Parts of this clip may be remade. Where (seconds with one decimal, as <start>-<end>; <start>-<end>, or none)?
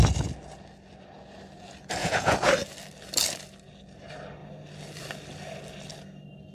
2.0-2.5